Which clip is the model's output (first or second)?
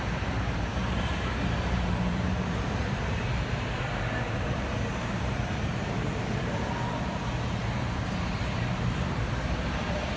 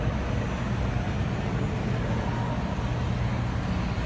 first